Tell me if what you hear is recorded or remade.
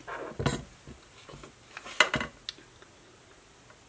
recorded